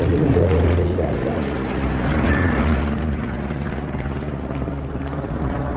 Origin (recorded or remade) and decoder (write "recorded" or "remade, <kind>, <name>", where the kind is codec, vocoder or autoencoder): remade, vocoder, Vocos